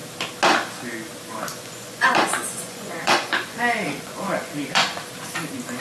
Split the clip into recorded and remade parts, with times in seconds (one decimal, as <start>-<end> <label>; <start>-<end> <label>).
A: 0.0-1.5 recorded; 1.5-5.0 remade; 5.0-5.8 recorded